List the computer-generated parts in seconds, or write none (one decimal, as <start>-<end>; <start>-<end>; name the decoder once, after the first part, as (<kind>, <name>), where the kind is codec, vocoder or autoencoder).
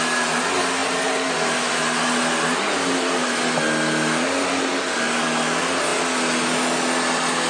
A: none